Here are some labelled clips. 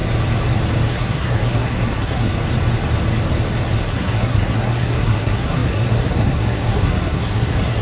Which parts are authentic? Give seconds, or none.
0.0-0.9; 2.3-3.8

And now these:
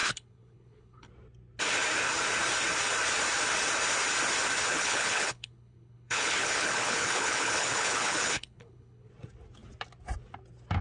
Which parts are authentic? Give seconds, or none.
1.1-4.7; 9.1-10.8

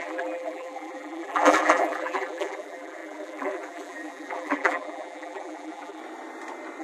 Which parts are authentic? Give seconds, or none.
6.0-6.8

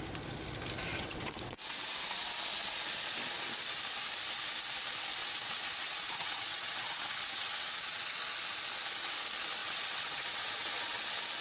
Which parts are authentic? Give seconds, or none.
0.0-0.9; 2.2-5.2; 8.3-9.6; 11.0-11.4

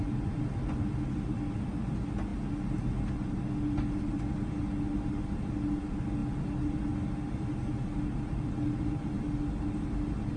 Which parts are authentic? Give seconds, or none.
0.0-10.4